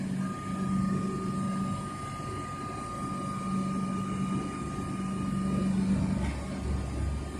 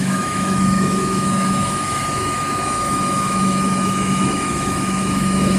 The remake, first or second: second